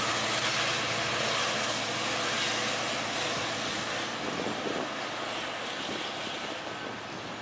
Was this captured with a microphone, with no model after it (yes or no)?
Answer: yes